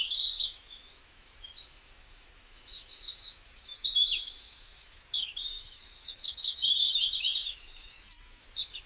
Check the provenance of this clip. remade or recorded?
remade